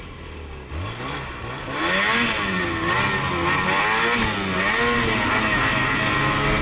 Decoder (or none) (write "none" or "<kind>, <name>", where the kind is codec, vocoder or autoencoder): none